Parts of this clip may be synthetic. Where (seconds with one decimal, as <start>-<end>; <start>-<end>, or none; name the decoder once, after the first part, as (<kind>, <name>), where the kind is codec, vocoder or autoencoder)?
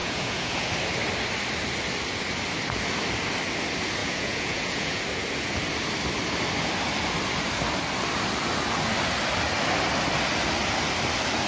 0.0-0.7 (vocoder, Vocos); 4.0-5.0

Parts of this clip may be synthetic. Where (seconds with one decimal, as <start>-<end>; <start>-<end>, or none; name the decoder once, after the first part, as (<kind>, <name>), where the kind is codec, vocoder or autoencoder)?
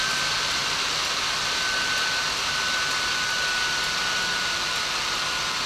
none